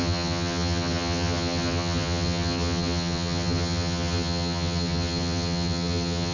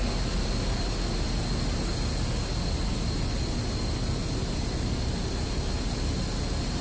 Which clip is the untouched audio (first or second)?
second